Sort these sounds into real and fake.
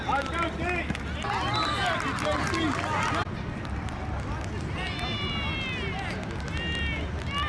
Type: real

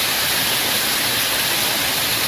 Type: real